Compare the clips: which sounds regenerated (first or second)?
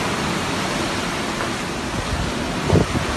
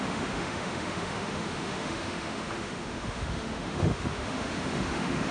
second